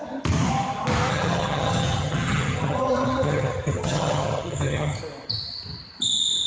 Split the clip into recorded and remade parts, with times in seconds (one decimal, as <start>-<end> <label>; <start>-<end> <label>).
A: 0.0-1.1 recorded; 1.1-5.0 remade; 5.0-6.5 recorded